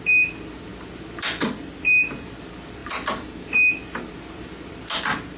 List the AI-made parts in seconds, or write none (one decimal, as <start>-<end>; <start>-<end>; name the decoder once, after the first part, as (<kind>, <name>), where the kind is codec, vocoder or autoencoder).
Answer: none